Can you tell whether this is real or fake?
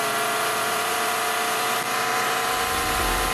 real